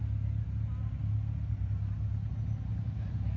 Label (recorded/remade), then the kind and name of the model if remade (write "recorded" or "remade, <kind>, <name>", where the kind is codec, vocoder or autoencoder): recorded